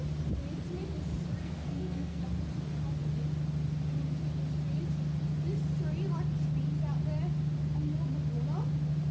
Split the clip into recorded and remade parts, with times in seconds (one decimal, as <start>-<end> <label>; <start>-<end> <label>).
0.0-1.4 recorded; 1.4-2.2 remade; 2.2-9.1 recorded